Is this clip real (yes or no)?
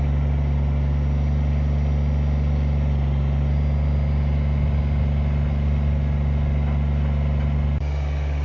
yes